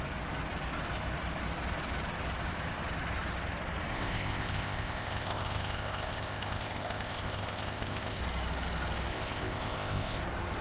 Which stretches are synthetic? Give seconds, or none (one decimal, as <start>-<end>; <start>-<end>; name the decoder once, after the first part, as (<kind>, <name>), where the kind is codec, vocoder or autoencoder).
3.9-8.2 (codec, ZipCodec); 9.1-10.2